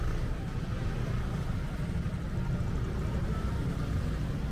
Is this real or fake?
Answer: real